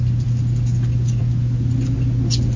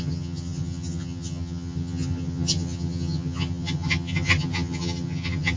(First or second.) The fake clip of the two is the second